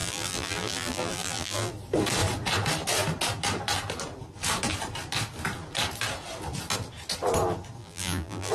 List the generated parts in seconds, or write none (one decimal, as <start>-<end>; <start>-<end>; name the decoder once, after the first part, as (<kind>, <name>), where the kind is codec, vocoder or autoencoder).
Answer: 0.0-1.7 (vocoder, BigVGAN v2); 7.8-8.5